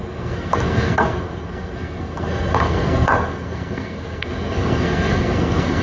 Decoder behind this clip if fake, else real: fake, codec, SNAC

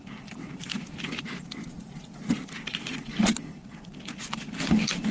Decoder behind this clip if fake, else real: real